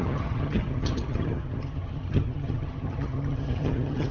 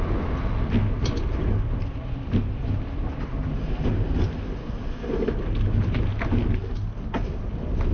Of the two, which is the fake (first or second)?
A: first